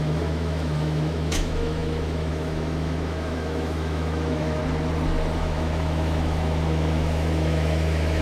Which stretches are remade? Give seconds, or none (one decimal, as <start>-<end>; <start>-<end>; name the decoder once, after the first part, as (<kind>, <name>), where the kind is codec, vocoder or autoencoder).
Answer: 0.0-4.6 (autoencoder, DAC-VAE); 5.4-8.2

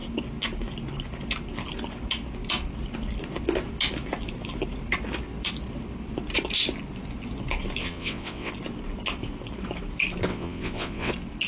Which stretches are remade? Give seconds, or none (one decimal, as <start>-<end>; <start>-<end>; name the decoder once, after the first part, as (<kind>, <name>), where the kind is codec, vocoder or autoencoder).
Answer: 7.8-8.5 (vocoder, WaveNeXt); 10.3-11.1

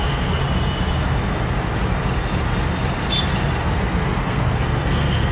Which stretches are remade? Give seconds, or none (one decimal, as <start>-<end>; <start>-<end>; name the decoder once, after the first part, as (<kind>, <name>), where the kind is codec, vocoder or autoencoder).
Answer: 0.0-0.4 (codec, SNAC); 3.6-5.3

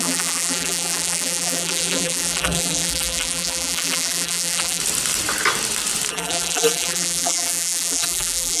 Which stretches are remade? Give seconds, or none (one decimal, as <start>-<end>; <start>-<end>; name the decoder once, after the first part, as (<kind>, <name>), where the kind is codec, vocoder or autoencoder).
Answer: 0.0-4.8 (vocoder, BigVGAN v2); 6.1-8.6

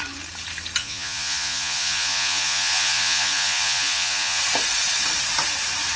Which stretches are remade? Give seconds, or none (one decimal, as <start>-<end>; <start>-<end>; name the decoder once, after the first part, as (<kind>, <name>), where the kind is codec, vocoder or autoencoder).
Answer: 0.8-4.4 (vocoder, Vocos)

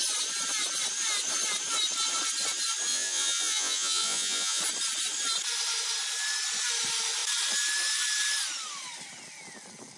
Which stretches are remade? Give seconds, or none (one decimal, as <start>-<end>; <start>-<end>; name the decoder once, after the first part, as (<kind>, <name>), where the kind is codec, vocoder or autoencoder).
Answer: 2.9-4.6 (vocoder, Vocos)

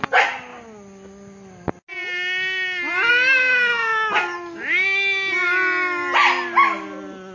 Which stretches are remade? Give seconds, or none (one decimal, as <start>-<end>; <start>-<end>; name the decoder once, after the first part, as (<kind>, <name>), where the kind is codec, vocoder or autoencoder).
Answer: none